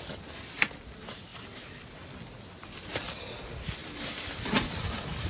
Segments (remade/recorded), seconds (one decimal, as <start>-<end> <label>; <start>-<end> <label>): 0.0-5.3 recorded